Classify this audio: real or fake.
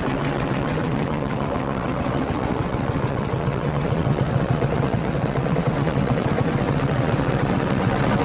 fake